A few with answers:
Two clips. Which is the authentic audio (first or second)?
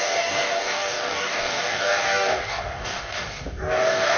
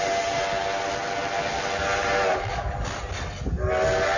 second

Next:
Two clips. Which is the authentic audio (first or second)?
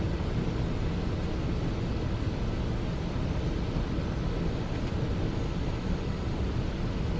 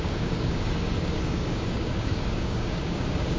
first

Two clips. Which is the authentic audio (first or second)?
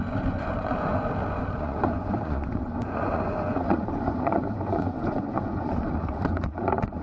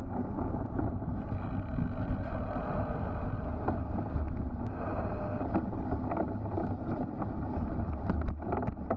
second